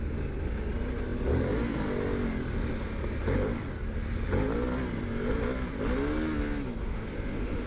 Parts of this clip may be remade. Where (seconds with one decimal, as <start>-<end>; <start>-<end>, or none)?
6.8-7.7